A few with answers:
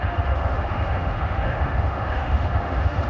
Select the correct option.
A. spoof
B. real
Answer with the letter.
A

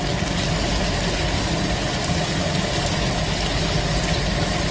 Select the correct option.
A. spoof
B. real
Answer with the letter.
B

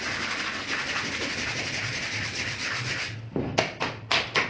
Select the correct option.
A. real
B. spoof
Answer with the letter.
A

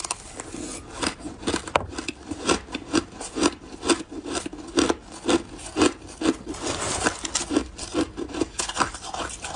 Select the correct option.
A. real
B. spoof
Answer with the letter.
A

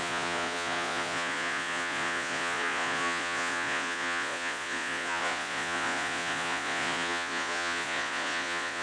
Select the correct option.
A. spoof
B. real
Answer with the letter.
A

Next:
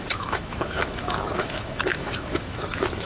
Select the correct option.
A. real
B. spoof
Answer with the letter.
B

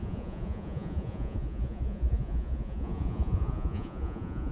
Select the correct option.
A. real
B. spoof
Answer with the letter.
B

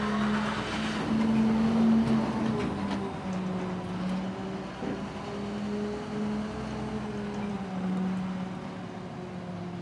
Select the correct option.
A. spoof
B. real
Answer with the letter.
B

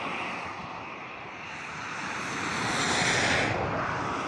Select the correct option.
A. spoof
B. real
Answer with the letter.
B